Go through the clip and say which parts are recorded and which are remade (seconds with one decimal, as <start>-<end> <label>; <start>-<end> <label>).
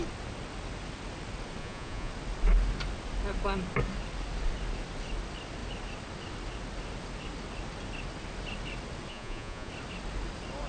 0.0-1.6 recorded; 1.6-2.1 remade; 2.1-9.1 recorded; 9.1-9.7 remade; 9.7-10.7 recorded